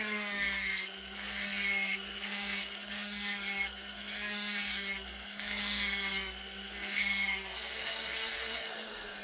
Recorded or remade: remade